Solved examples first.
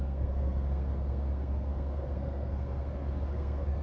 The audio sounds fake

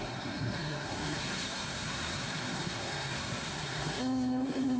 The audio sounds fake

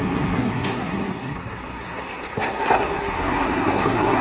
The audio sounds fake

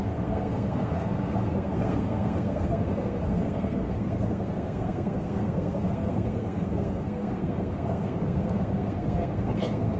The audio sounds fake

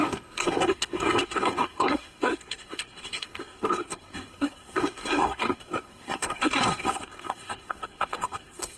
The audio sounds fake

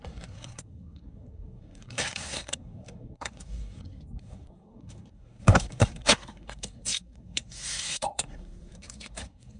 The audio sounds fake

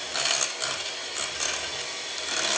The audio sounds real